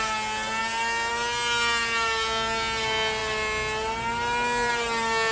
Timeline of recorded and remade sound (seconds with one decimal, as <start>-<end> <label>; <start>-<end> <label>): 0.0-5.3 recorded